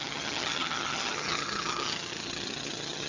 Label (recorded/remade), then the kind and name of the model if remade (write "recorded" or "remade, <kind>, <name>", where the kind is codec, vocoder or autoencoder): remade, vocoder, HiFi-GAN